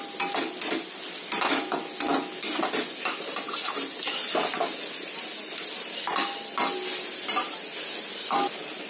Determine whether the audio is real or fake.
real